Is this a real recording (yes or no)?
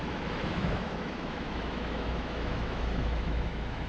no